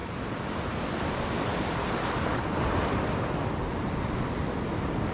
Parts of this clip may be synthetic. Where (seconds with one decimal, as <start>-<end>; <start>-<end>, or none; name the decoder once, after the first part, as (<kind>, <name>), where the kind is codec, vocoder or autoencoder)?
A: 0.0-3.1 (vocoder, BigVGAN v2)